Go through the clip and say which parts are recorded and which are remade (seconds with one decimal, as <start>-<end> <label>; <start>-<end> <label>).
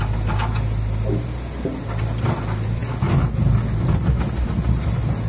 0.0-5.3 recorded